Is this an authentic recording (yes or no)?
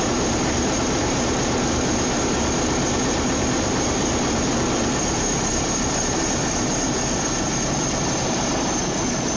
no